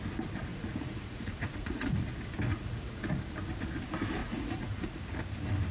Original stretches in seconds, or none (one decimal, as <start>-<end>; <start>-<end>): 0.0-0.5; 2.0-2.5; 3.2-4.2; 5.1-5.7